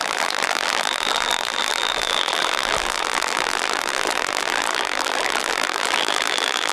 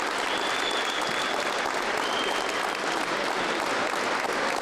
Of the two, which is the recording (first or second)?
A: second